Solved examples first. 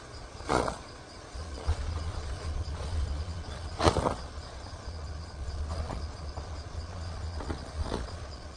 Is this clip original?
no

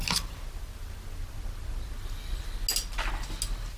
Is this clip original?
yes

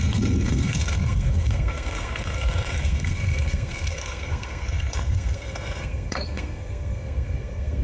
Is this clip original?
no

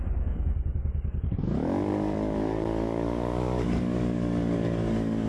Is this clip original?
no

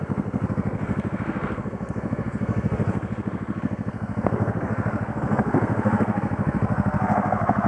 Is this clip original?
no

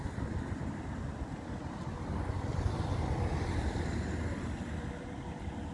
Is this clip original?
yes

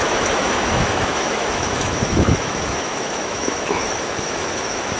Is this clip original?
no